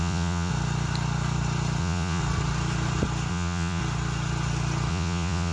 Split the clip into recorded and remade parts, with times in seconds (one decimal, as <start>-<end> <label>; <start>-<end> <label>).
0.0-0.5 remade; 0.5-1.8 recorded; 1.8-2.2 remade; 2.2-3.3 recorded; 3.3-3.8 remade; 3.8-4.9 recorded; 4.9-5.5 remade